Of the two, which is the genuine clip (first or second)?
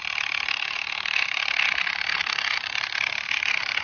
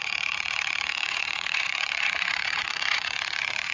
first